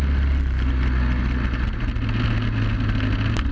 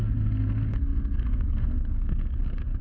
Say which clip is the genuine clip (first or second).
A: first